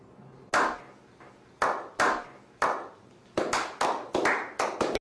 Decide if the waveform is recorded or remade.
recorded